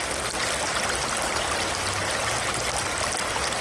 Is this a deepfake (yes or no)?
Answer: no